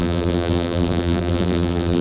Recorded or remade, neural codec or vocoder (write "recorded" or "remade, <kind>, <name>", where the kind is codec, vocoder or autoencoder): remade, vocoder, BigVGAN v2